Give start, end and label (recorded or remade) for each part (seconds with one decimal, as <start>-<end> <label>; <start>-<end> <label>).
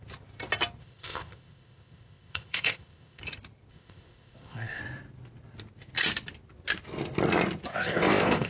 0.0-0.8 recorded; 0.8-3.2 remade; 3.2-3.7 recorded; 3.7-4.8 remade; 4.8-7.7 recorded; 7.7-8.5 remade